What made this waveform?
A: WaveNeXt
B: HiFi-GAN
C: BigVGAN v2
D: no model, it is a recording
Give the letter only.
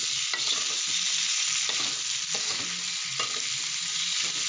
D